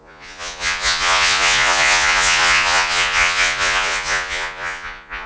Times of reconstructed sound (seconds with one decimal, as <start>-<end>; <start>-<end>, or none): 0.0-5.3